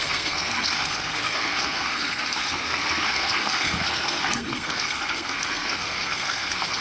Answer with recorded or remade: remade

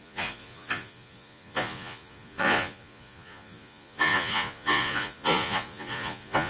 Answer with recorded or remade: remade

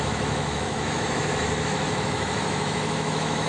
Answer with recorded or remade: remade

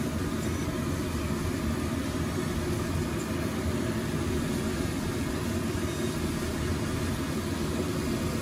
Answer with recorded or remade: recorded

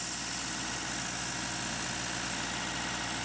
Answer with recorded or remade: recorded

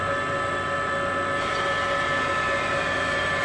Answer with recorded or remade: recorded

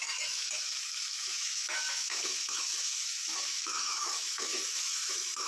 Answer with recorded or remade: remade